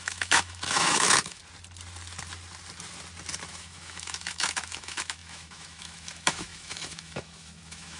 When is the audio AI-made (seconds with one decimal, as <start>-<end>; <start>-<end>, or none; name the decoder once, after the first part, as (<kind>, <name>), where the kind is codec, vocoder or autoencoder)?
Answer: 0.0-1.4 (autoencoder, DAC-VAE); 3.5-8.0